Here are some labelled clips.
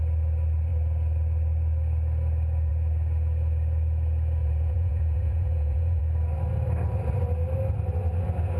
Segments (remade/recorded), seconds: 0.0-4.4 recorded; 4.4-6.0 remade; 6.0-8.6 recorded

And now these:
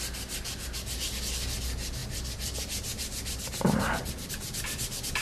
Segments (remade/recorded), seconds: 0.0-2.0 recorded; 2.0-4.3 remade; 4.3-5.2 recorded

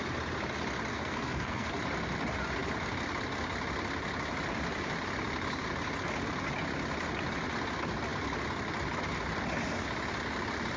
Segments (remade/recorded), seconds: 0.0-0.9 recorded; 0.9-1.7 remade; 1.7-10.8 recorded

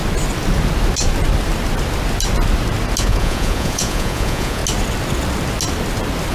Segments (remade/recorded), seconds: 0.0-3.0 recorded; 3.0-4.6 remade; 4.6-6.3 recorded

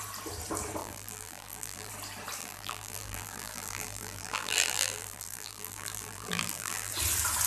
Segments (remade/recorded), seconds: 0.0-0.8 recorded; 0.8-1.9 remade; 1.9-2.4 recorded; 2.4-6.9 remade; 6.9-7.5 recorded

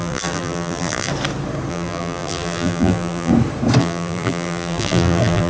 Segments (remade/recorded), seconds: 0.0-1.1 remade; 1.1-1.7 recorded; 1.7-3.3 remade; 3.3-3.8 recorded; 3.8-5.5 remade